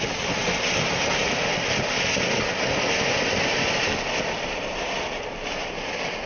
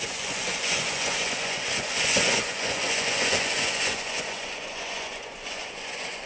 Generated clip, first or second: second